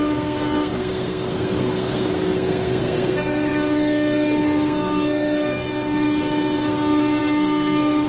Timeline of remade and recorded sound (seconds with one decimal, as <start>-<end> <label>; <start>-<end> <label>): 0.0-8.1 remade